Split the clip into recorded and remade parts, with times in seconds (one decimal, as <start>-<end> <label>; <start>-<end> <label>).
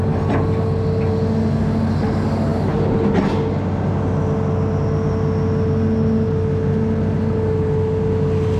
0.0-8.6 recorded